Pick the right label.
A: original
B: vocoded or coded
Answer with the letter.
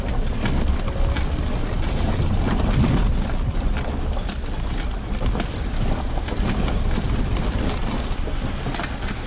A